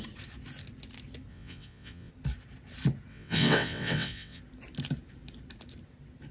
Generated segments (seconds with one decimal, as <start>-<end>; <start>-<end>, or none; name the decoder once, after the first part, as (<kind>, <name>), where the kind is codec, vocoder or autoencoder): 1.3-2.1 (vocoder, WaveNeXt); 3.1-4.4